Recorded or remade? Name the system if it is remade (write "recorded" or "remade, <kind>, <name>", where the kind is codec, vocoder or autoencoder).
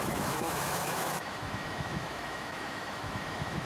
remade, autoencoder, DAC-VAE